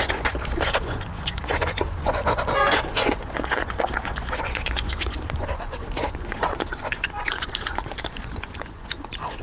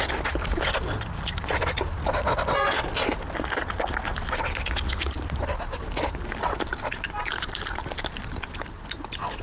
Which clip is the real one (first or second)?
second